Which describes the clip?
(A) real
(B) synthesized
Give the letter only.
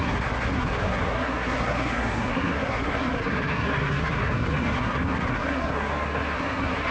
B